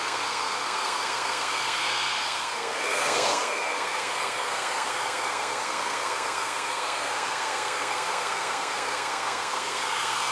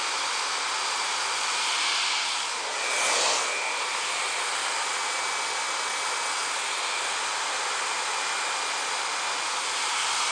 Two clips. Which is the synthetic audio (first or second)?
first